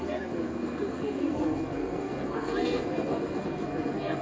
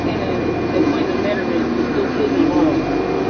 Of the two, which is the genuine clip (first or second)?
second